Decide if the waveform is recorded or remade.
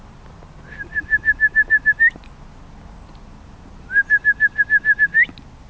recorded